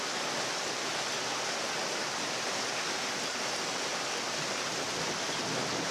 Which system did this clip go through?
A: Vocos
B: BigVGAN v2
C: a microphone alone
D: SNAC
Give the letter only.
C